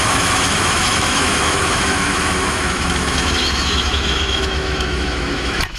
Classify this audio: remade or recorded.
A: remade